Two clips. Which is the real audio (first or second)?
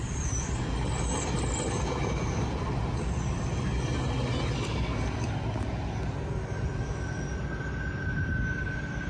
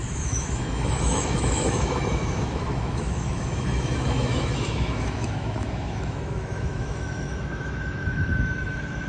first